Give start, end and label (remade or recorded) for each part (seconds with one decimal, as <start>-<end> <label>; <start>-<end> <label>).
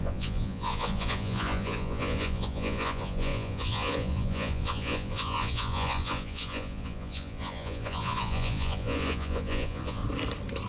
0.0-10.0 remade; 10.0-10.7 recorded